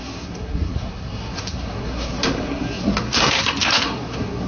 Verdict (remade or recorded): remade